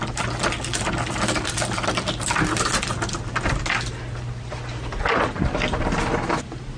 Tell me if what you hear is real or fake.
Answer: real